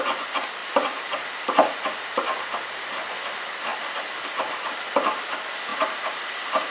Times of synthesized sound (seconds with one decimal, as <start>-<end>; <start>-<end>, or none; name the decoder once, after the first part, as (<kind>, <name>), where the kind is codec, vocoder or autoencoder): 0.6-2.9 (vocoder, BigVGAN v2); 5.7-6.7